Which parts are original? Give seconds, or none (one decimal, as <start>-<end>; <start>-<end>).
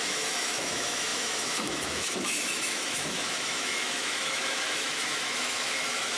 none